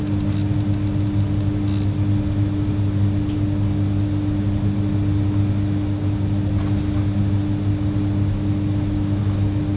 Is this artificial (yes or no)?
no